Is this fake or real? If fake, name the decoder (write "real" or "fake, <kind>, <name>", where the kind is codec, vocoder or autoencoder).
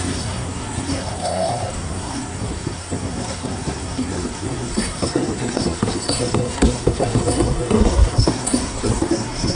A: fake, codec, SNAC